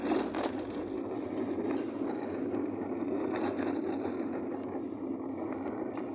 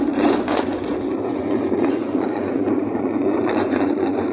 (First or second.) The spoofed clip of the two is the second